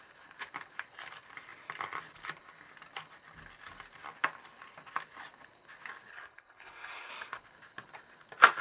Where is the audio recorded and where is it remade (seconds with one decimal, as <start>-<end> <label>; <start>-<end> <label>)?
0.0-6.1 recorded; 6.1-7.1 remade; 7.1-8.6 recorded